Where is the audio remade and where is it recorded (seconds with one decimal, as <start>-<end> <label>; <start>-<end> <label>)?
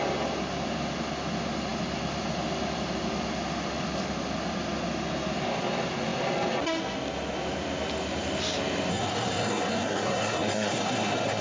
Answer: 0.0-8.9 recorded; 8.9-11.4 remade